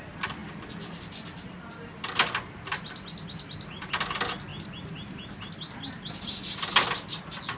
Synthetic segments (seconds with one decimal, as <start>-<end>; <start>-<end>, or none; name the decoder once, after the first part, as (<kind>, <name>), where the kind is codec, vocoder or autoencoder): none